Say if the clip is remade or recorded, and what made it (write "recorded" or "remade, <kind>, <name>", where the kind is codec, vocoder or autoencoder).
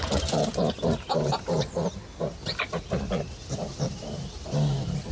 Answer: recorded